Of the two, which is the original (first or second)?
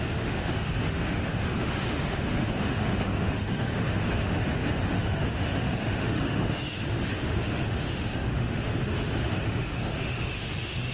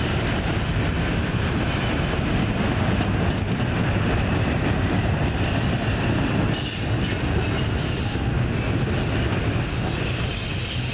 second